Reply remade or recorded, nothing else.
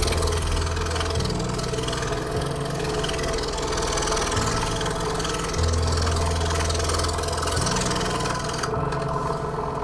recorded